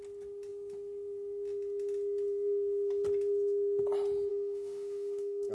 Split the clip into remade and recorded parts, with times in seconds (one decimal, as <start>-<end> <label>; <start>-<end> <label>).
0.0-4.3 recorded; 4.3-5.5 remade